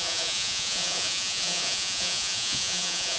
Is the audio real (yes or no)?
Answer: no